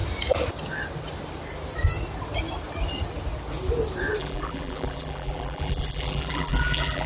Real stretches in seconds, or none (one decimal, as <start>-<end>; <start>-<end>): 0.0-4.2